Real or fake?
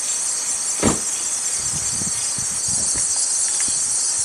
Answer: real